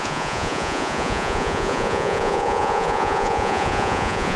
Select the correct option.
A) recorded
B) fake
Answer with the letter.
B